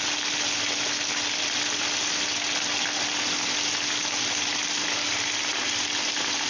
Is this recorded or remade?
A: recorded